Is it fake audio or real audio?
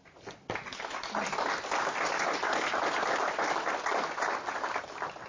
real